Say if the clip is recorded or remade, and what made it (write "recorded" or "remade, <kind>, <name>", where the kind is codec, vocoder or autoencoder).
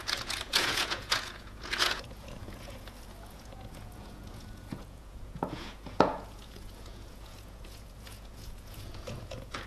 remade, vocoder, Vocos